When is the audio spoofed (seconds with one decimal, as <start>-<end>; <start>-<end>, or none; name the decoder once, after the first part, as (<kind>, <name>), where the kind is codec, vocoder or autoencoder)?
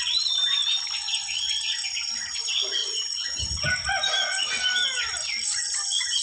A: 0.0-2.8 (vocoder, BigVGAN v2); 5.1-6.2